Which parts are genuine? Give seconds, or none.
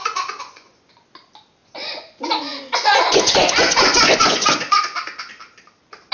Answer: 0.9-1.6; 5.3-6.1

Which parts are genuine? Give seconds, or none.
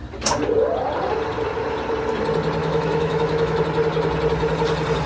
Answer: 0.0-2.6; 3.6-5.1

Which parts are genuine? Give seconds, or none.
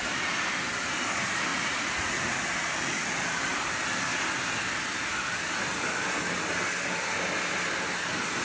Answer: 0.0-1.5; 2.1-8.4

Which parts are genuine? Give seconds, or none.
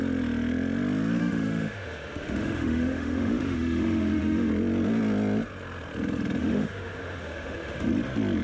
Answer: 0.0-1.2; 4.5-6.4; 7.9-8.4